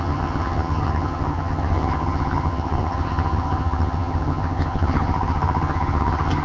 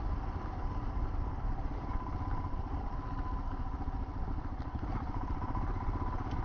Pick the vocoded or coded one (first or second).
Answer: first